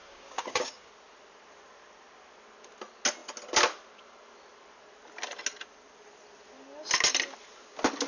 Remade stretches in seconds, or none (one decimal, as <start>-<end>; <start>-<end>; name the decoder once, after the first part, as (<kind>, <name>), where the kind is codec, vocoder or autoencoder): 0.0-0.9 (codec, DAC)